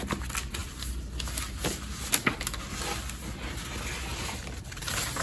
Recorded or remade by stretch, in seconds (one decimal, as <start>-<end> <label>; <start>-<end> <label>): 0.0-5.2 recorded